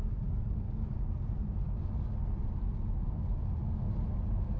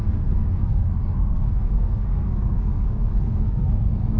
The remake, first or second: second